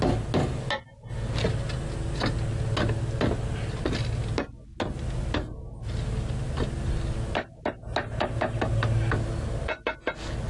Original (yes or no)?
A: yes